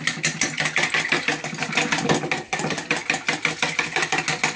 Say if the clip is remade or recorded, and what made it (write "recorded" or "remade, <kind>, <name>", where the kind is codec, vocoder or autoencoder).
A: recorded